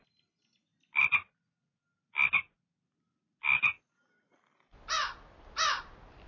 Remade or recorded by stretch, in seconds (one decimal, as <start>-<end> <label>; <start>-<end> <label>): 0.0-6.3 recorded